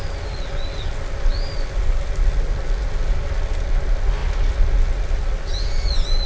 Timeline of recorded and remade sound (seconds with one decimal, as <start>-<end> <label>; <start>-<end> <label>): 0.0-6.3 recorded